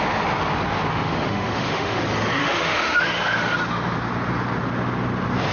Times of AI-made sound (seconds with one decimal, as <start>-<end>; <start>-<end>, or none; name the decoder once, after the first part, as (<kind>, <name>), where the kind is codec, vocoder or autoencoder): 0.9-2.0 (autoencoder, DAC-VAE); 2.4-3.0